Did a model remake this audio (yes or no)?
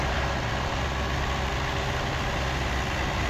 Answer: no